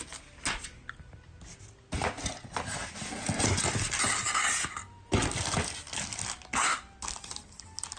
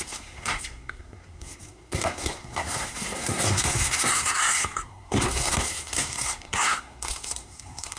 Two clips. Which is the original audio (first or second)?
first